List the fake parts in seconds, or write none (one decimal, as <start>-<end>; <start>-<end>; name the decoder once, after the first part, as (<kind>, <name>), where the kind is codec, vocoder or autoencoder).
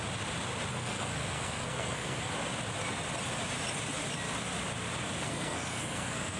0.7-2.3 (codec, SNAC); 5.2-6.4